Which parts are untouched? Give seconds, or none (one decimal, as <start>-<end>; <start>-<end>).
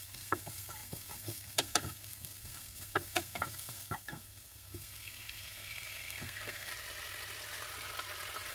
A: 6.7-8.5